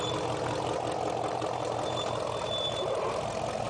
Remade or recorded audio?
recorded